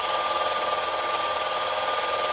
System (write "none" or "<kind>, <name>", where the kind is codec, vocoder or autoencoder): none